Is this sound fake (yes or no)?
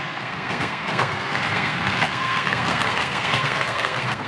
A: yes